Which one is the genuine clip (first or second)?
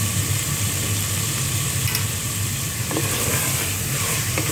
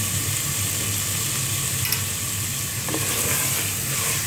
second